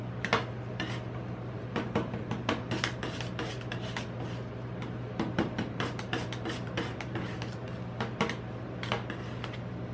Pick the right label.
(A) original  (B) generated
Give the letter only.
A